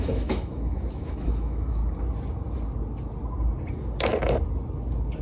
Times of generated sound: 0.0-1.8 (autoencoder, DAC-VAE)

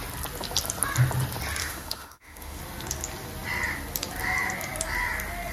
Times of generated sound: 1.6-2.6 (autoencoder, DAC-VAE)

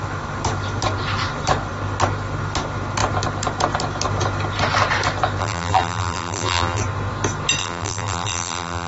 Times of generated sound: 5.4-6.8 (vocoder, BigVGAN v2); 7.6-8.9

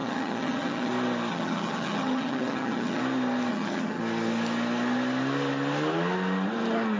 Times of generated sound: 0.0-0.9 (vocoder, HiFi-GAN); 1.3-3.0; 3.5-4.0

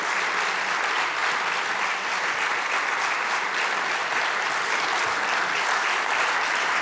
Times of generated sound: none

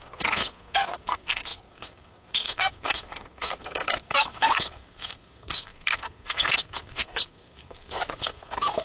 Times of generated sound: 0.0-8.8 (codec, SNAC)

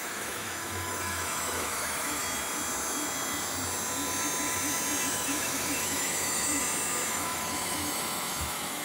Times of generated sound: 0.0-2.2 (autoencoder, DAC-VAE); 5.1-6.6; 7.1-8.8